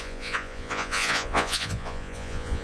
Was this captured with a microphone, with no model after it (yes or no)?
no